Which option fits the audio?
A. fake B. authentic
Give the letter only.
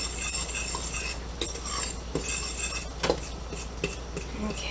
B